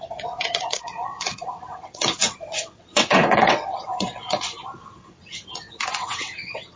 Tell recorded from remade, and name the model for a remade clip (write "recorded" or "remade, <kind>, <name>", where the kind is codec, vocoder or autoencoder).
remade, vocoder, WaveNeXt